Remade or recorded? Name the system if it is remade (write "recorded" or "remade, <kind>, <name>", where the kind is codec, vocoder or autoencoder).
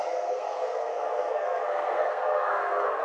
remade, codec, SNAC